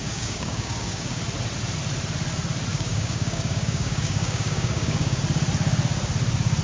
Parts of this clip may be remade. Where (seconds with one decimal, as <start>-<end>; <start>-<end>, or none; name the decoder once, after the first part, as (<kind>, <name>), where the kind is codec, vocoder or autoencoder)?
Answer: 0.0-1.2 (codec, DAC); 2.7-5.2